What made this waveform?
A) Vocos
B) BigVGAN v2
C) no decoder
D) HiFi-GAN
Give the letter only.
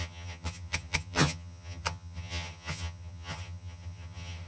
D